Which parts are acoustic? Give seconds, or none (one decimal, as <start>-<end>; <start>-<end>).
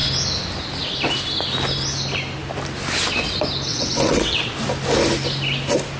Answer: 0.0-3.7; 4.5-6.0